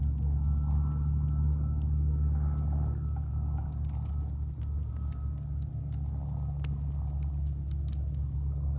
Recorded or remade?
recorded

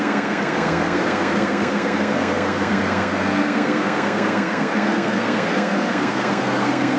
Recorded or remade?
remade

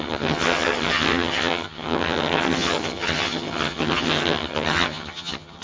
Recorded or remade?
remade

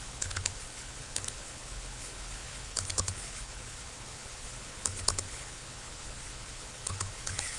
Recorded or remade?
remade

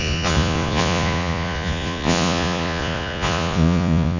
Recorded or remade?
remade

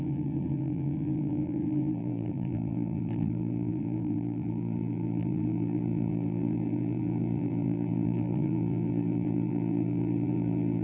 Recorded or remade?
remade